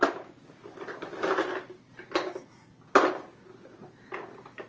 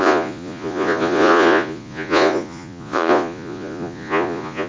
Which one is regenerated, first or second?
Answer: second